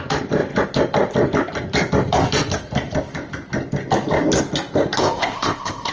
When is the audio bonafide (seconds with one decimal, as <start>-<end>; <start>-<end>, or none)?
0.0-5.0